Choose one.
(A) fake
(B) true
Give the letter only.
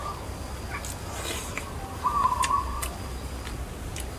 B